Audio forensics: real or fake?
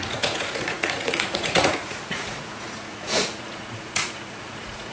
fake